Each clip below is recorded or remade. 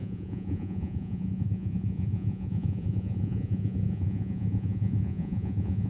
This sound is remade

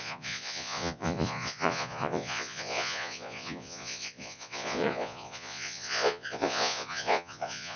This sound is remade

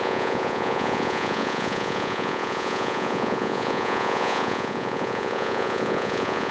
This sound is remade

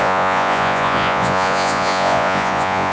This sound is remade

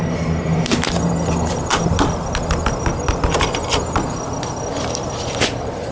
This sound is recorded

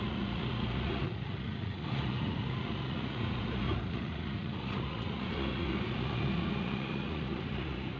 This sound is remade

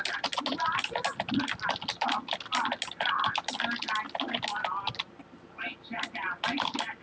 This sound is recorded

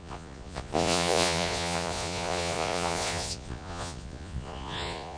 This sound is remade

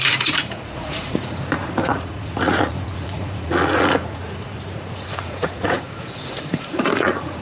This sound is remade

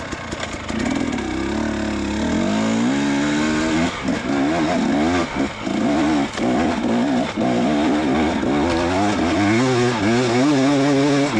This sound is recorded